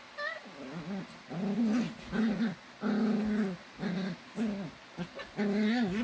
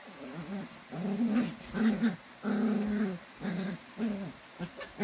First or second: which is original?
first